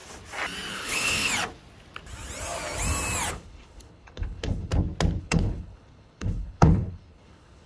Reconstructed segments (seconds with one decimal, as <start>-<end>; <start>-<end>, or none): 0.7-1.3; 3.3-4.7; 5.2-7.7